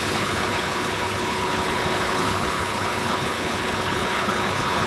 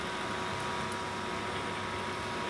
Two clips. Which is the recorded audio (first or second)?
second